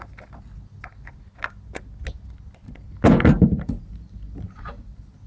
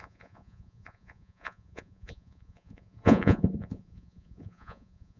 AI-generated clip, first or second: second